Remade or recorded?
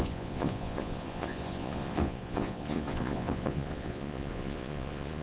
remade